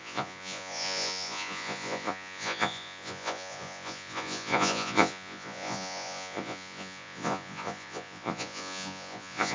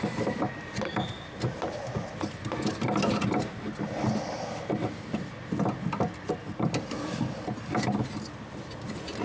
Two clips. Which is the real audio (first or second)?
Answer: second